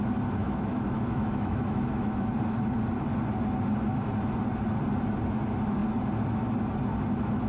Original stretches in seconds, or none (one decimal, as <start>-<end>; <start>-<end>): 0.0-0.4; 2.3-7.5